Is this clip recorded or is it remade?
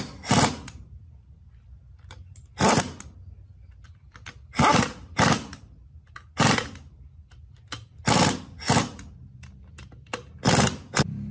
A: recorded